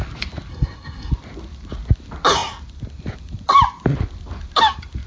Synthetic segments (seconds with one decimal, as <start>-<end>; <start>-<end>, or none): 0.5-1.1